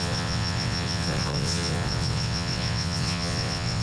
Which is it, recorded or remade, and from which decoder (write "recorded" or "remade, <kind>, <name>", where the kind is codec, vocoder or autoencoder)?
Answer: remade, vocoder, WaveNeXt